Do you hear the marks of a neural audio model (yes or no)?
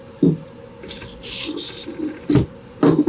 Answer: no